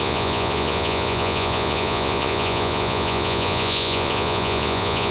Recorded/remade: remade